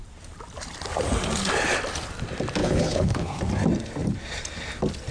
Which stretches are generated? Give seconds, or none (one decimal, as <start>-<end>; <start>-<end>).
2.6-3.4